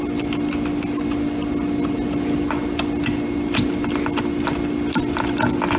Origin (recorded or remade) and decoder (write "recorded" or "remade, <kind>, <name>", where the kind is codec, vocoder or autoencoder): recorded